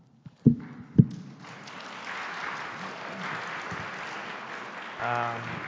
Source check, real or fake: real